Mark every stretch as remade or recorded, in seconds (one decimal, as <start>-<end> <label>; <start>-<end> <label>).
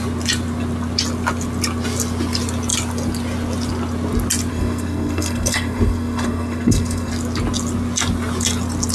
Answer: 0.0-4.5 recorded; 4.5-7.1 remade; 7.1-8.9 recorded